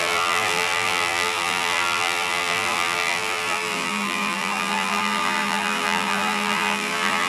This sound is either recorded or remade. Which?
remade